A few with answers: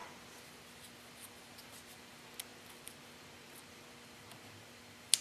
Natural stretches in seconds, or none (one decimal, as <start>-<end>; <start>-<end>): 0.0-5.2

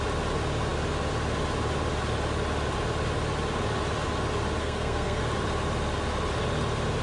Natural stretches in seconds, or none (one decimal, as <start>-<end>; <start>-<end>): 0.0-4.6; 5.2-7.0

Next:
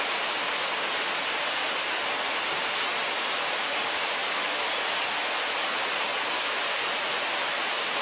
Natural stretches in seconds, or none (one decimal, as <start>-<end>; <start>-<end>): 2.9-3.8; 4.2-5.4